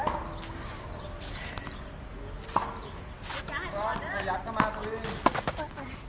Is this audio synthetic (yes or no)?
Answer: no